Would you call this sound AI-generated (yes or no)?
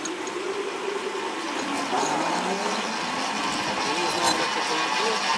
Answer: no